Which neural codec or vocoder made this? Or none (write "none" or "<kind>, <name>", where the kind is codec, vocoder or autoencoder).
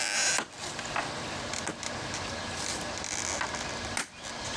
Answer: none